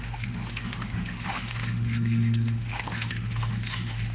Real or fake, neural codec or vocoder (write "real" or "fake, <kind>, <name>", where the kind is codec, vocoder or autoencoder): fake, autoencoder, DAC-VAE